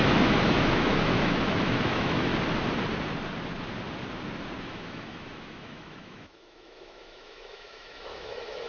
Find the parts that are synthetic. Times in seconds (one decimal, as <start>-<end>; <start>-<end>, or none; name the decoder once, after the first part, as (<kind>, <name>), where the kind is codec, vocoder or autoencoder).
0.0-2.3 (autoencoder, DAC-VAE); 4.6-8.7